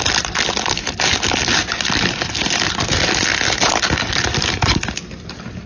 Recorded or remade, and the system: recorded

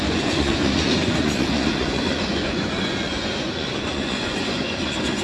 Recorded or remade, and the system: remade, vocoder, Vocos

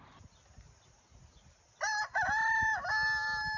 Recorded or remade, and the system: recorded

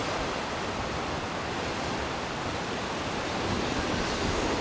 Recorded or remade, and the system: recorded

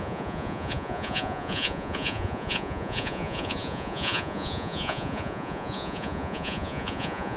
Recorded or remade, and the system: remade, vocoder, Vocos